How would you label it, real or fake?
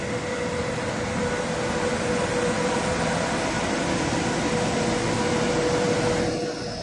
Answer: real